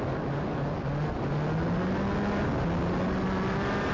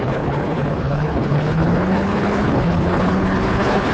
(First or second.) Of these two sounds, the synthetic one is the second